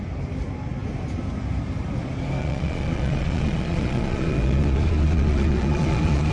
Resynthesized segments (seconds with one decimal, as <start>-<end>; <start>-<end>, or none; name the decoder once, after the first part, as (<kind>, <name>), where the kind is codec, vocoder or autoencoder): 2.4-6.3 (vocoder, Vocos)